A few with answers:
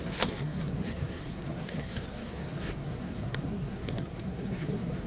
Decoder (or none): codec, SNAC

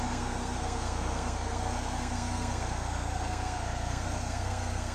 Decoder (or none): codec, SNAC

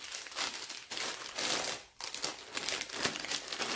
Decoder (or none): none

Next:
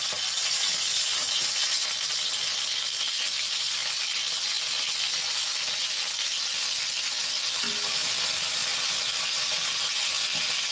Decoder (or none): none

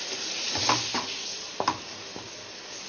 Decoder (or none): none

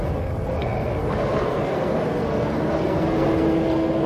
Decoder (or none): codec, SNAC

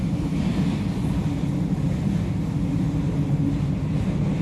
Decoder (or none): none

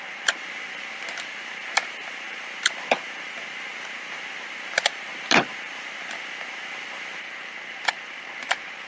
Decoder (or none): none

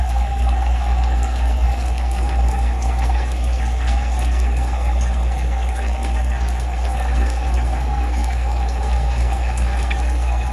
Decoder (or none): codec, SNAC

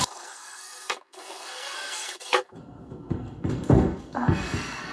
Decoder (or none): codec, SNAC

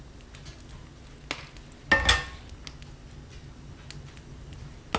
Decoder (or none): none